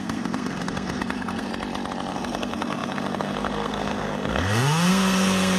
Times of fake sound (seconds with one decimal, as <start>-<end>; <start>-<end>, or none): 0.0-1.5; 2.1-5.6